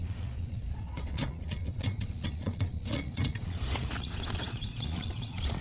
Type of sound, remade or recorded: remade